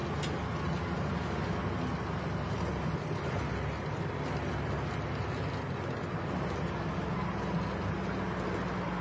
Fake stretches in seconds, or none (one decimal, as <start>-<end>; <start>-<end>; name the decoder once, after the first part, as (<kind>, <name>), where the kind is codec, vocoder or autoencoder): none